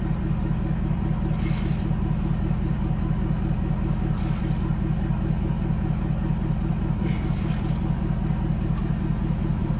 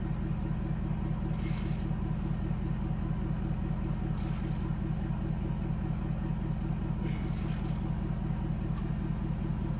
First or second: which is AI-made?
first